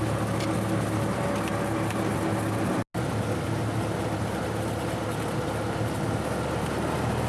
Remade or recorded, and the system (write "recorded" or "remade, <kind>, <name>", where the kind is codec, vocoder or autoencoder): recorded